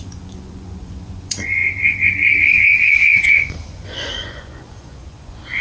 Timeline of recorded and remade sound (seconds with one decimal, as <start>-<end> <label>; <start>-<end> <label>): 0.0-5.6 remade